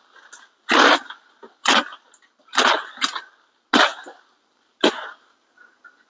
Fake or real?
real